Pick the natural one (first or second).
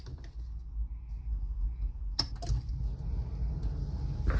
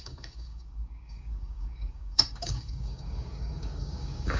first